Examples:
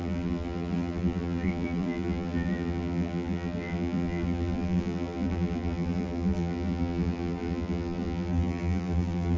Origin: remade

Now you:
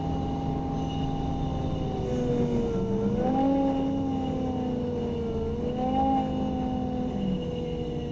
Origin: recorded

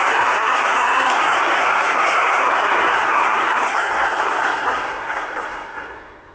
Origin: remade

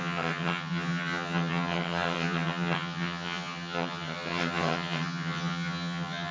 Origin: remade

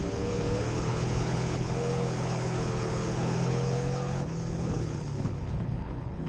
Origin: remade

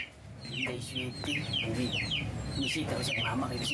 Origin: recorded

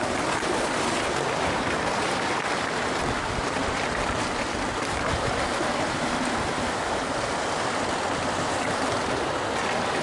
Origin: recorded